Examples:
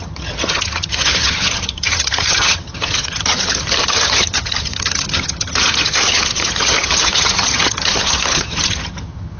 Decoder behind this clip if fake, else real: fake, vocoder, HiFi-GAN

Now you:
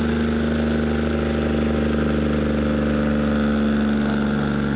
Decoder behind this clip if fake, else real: real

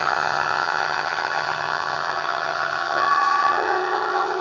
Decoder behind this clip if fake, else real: fake, vocoder, HiFi-GAN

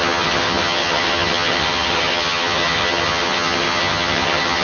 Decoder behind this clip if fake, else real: fake, vocoder, HiFi-GAN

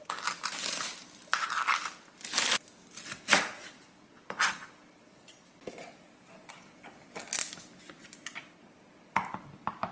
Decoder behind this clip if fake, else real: real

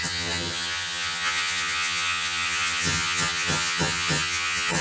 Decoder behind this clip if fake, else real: fake, vocoder, HiFi-GAN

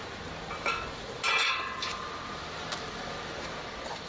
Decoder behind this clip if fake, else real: real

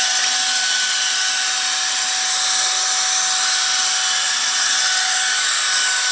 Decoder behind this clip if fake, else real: real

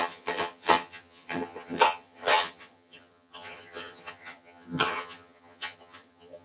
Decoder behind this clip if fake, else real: fake, vocoder, HiFi-GAN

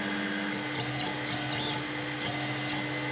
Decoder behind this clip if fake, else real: real